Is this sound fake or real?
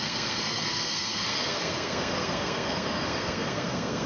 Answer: fake